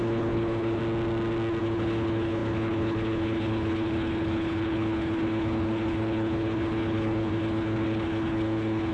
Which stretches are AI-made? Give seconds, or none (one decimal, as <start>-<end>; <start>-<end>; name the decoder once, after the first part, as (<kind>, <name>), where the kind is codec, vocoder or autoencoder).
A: 0.0-0.8 (codec, HILCodec); 1.6-8.9